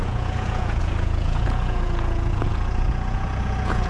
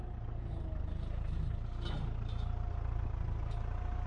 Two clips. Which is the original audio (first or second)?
second